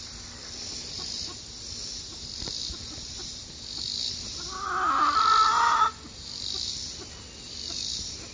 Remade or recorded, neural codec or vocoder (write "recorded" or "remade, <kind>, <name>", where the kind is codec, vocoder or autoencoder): recorded